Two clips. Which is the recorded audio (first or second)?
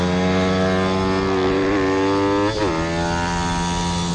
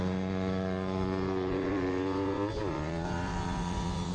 first